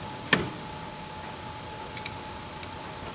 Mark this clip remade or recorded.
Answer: recorded